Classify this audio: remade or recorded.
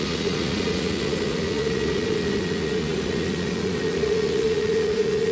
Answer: remade